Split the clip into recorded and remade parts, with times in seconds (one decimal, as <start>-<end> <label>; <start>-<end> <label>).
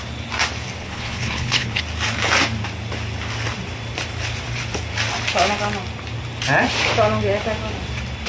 0.0-0.8 recorded; 0.8-1.8 remade; 1.8-8.3 recorded